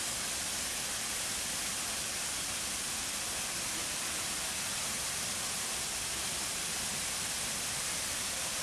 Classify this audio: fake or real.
real